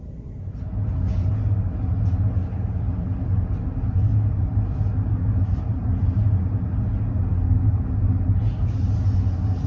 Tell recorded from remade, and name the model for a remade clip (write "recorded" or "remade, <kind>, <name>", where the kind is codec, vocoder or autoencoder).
recorded